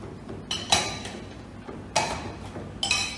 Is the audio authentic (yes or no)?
yes